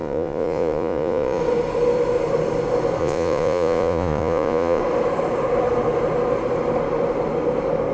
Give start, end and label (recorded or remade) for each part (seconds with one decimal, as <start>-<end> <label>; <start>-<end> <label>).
0.0-1.4 remade; 1.4-3.0 recorded; 3.0-4.8 remade; 4.8-7.9 recorded